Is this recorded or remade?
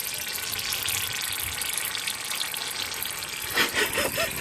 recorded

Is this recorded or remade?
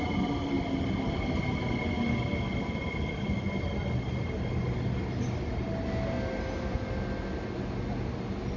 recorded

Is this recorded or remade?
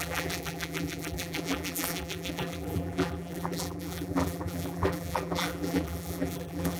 remade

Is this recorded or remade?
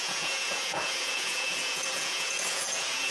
remade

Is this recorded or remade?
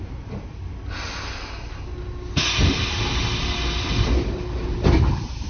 recorded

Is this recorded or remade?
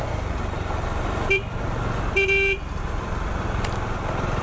recorded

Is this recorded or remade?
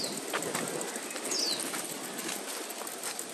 recorded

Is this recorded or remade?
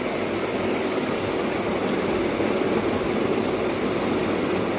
recorded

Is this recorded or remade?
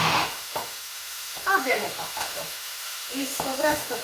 remade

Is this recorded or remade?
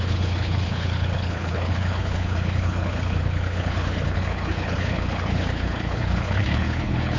remade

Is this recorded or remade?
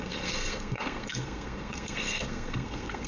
remade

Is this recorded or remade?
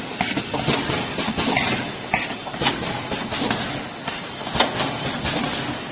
recorded